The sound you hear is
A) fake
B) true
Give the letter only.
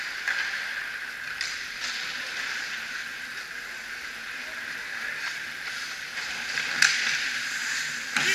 B